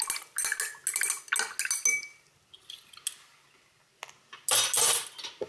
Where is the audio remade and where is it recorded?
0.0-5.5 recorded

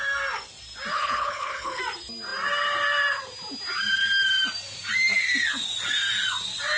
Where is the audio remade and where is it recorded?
0.0-0.9 recorded; 0.9-1.8 remade; 1.8-6.8 recorded

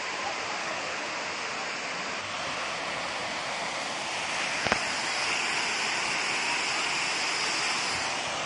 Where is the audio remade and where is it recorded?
0.0-0.6 recorded; 0.6-1.1 remade; 1.1-8.5 recorded

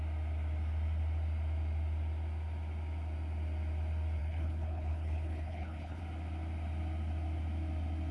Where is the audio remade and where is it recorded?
0.0-4.2 recorded; 4.2-6.0 remade; 6.0-8.1 recorded

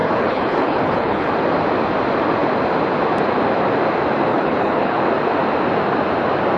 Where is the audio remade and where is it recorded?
0.0-1.3 remade; 1.3-4.3 recorded; 4.3-5.0 remade; 5.0-6.6 recorded